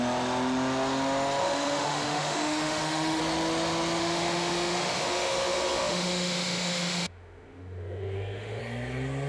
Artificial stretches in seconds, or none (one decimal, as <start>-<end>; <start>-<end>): 1.4-3.2; 4.0-8.6